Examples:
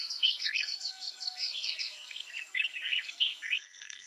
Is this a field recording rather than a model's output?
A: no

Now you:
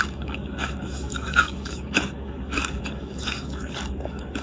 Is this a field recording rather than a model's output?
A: no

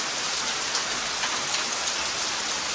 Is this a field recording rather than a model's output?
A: yes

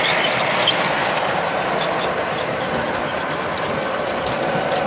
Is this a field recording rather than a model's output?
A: yes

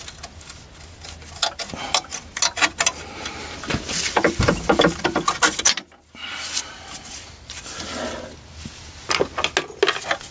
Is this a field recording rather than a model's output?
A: yes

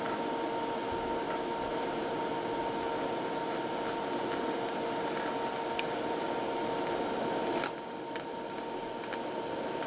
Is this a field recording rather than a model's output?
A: yes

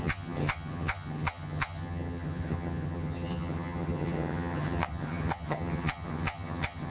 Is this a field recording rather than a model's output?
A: no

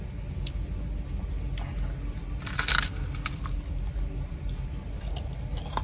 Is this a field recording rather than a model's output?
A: yes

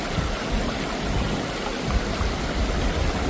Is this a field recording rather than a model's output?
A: yes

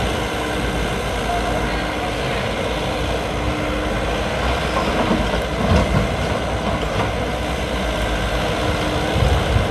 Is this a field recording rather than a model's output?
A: yes